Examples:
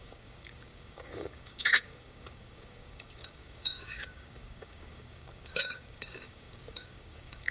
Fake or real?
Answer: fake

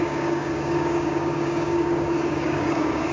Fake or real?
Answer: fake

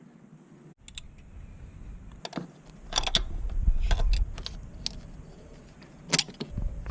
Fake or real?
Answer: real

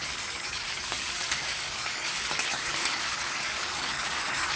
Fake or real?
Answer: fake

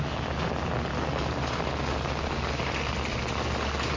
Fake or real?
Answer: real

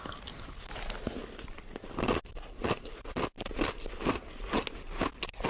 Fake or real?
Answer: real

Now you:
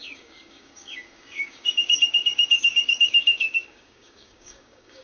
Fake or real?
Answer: fake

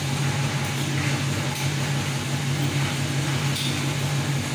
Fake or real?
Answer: real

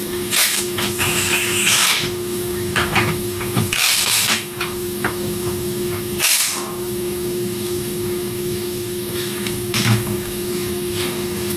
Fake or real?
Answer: fake